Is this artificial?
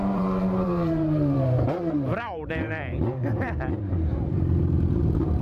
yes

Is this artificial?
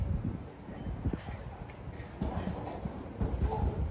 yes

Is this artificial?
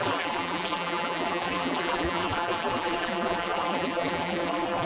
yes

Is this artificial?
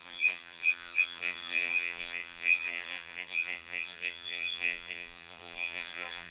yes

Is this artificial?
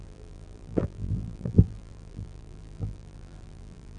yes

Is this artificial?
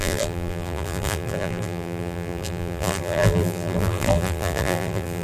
yes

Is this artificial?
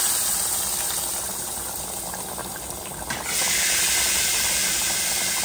yes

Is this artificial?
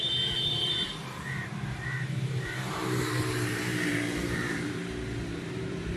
yes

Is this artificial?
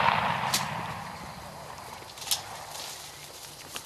no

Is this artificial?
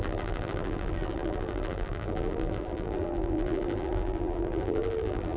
yes